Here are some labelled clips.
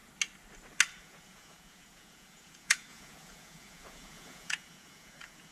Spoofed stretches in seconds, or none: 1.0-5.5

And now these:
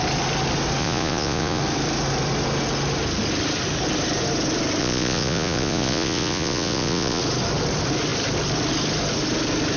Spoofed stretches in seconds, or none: 0.8-1.6; 4.8-7.2